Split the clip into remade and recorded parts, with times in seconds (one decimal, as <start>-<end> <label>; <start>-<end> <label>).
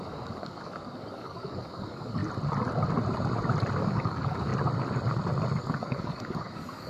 0.0-2.2 remade; 2.2-3.8 recorded; 3.8-4.5 remade; 4.5-5.6 recorded; 5.6-6.9 remade